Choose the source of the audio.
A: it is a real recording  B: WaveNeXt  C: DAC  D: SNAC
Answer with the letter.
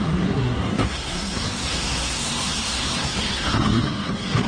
D